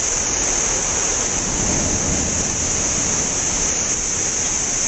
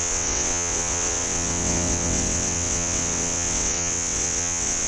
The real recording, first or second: first